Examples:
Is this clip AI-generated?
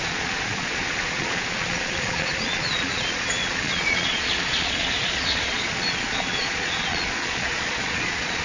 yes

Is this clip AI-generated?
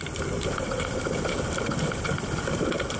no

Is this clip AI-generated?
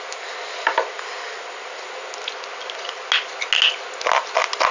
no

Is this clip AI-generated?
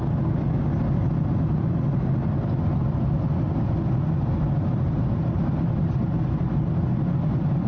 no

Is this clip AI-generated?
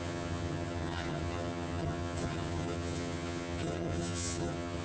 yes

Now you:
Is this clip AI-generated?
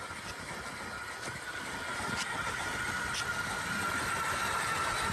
no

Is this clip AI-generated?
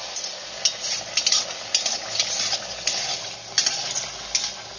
no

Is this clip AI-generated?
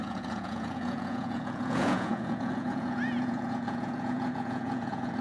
yes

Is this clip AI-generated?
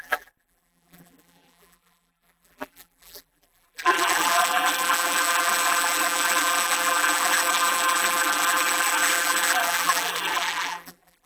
yes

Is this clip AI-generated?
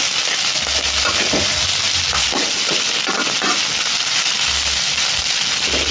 no